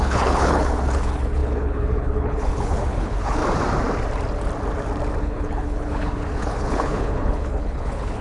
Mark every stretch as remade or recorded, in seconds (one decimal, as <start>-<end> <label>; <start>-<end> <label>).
0.0-3.4 remade; 3.4-5.2 recorded; 5.2-8.2 remade